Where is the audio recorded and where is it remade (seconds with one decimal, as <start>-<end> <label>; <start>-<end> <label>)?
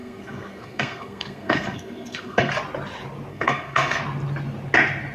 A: 0.0-2.5 remade; 2.5-3.3 recorded; 3.3-4.0 remade; 4.0-5.1 recorded